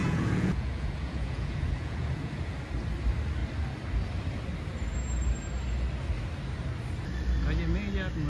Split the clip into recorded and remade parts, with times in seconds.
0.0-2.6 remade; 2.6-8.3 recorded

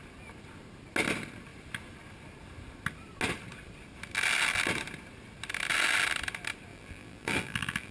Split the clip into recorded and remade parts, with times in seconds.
0.0-6.7 recorded; 6.7-7.9 remade

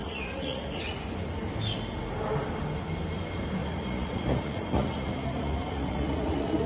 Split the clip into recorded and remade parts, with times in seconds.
0.0-0.7 remade; 0.7-3.6 recorded; 3.6-6.7 remade

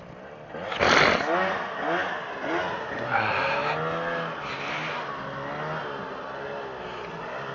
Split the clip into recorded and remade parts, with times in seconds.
0.0-7.5 recorded

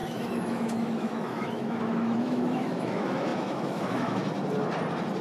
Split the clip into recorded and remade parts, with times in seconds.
0.0-4.2 remade; 4.2-5.2 recorded